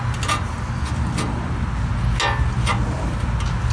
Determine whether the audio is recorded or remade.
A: recorded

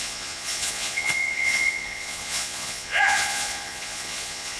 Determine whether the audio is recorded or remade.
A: remade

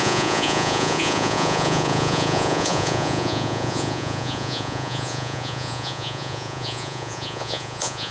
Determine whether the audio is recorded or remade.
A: remade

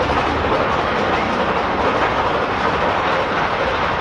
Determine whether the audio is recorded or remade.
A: recorded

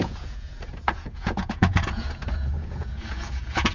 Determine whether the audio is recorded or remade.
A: remade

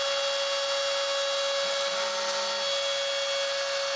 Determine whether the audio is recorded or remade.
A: recorded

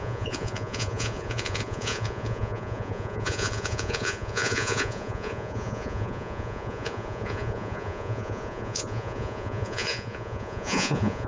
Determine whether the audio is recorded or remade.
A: remade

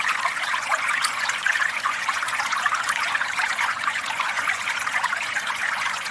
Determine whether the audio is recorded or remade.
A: remade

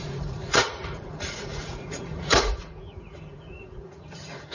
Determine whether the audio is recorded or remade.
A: remade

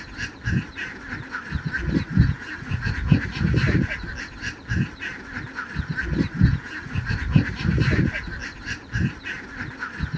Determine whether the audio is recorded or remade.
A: recorded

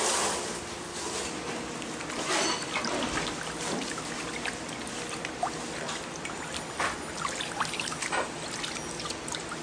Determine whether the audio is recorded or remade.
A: recorded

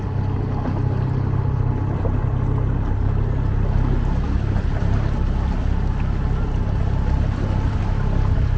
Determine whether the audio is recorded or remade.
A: recorded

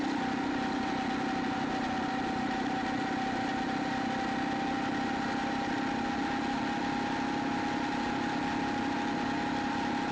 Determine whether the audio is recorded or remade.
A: recorded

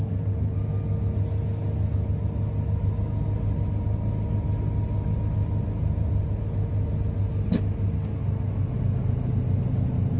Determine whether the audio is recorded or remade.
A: recorded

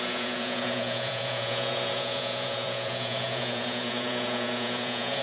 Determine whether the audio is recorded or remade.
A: remade